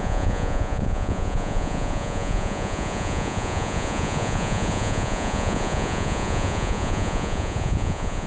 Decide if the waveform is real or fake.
fake